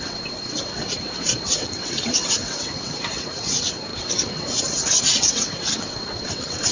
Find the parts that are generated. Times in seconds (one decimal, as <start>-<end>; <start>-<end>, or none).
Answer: 0.0-6.7